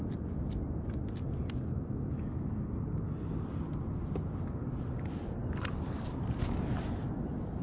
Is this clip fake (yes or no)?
no